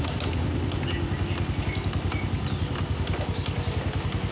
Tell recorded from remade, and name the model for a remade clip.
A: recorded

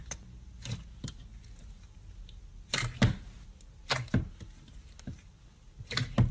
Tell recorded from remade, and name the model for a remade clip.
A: recorded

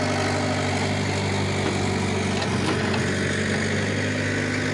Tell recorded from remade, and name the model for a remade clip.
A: recorded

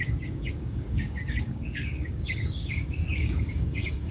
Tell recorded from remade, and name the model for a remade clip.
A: remade, codec, DAC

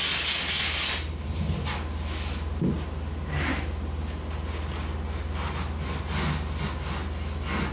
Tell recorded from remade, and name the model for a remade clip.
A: recorded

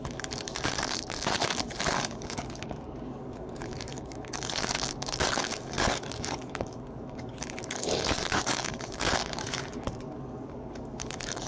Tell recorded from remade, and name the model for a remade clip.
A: remade, codec, DAC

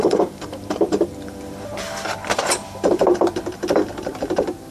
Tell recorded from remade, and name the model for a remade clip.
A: remade, vocoder, BigVGAN v2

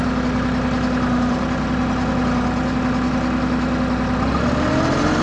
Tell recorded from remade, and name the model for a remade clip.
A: recorded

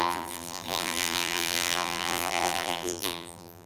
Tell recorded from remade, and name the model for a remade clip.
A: remade, vocoder, BigVGAN v2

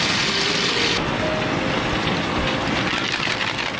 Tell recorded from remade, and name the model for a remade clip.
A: recorded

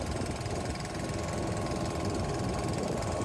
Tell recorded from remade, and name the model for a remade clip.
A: recorded